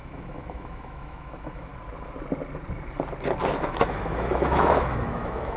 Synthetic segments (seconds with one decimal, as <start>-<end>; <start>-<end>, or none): 0.0-1.7; 3.4-5.6